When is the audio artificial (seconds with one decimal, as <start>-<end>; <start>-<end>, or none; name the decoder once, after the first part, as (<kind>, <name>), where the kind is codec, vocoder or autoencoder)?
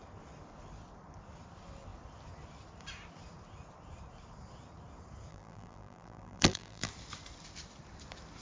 5.3-6.9 (vocoder, BigVGAN v2)